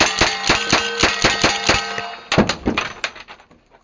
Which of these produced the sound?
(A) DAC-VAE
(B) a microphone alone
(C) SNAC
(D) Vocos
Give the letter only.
B